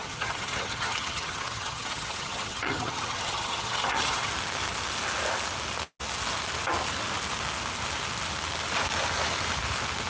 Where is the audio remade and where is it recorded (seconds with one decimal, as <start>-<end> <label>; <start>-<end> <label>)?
0.0-4.3 remade; 4.3-10.1 recorded